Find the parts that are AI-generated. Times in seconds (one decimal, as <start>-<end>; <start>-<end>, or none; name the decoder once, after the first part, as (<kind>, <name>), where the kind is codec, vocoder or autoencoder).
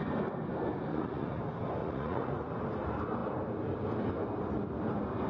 0.9-1.4 (vocoder, Vocos); 1.8-2.3